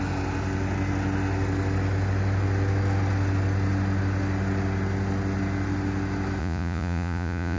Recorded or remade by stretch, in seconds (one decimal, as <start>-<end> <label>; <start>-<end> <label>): 0.0-6.4 recorded; 6.4-7.6 remade